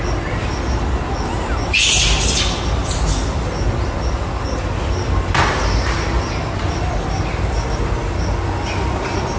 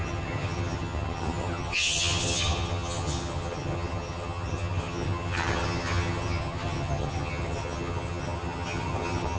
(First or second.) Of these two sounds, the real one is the first